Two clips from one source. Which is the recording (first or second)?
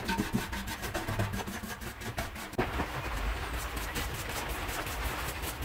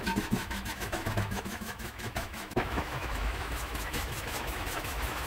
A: first